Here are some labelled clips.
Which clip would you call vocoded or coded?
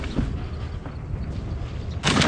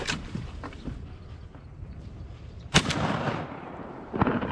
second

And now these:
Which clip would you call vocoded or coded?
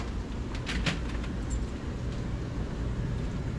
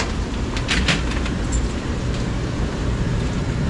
second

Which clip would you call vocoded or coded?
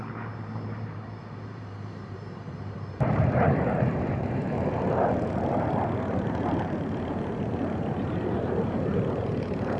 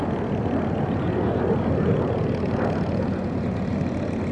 first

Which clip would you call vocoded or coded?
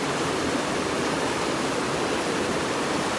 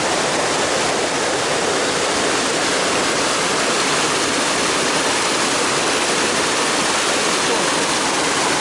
first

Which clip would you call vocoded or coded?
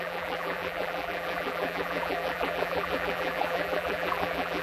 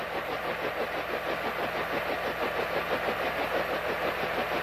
first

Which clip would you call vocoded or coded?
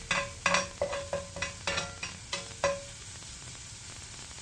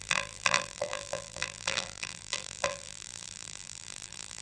second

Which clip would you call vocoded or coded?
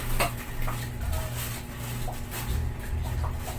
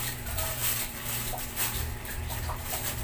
second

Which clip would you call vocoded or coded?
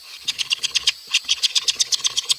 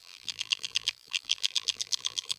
second